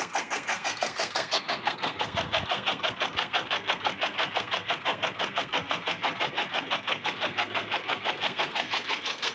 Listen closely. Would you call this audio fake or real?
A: fake